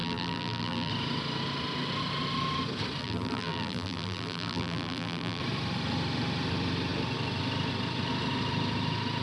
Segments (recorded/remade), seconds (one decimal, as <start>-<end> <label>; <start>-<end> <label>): 0.0-0.9 remade; 0.9-3.0 recorded; 3.0-5.4 remade; 5.4-9.2 recorded